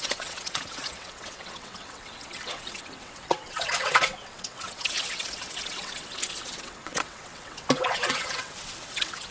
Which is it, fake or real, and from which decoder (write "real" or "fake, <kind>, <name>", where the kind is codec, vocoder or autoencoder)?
fake, vocoder, WaveNeXt